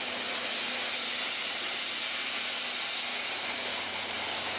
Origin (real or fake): real